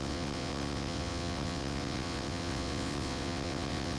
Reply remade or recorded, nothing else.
remade